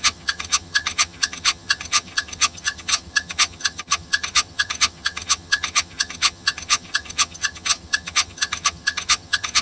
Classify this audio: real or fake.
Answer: fake